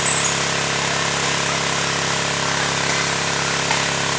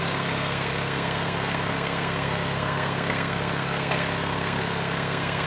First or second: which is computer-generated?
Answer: second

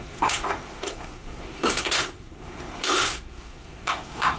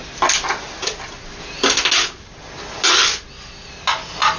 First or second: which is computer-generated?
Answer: first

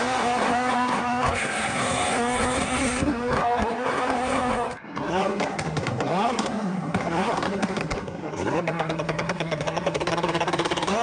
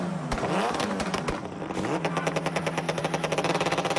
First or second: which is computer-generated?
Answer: first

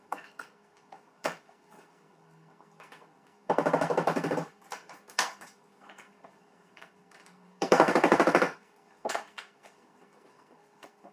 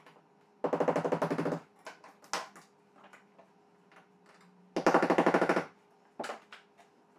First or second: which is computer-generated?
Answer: first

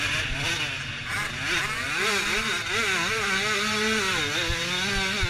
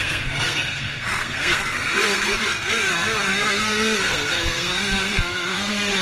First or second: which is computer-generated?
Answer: second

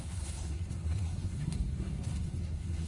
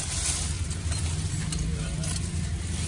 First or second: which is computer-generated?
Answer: first